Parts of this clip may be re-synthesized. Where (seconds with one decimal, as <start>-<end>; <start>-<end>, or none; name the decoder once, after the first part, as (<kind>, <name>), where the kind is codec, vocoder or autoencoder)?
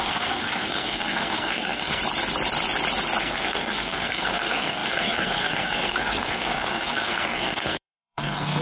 0.0-2.0 (codec, SNAC); 3.2-8.6